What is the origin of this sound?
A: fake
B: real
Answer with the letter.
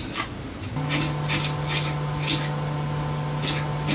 B